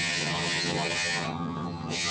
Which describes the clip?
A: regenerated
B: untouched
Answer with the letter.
A